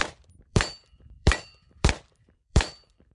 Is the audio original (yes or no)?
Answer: no